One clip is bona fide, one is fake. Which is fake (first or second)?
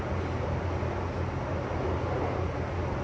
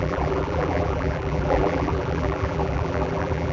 second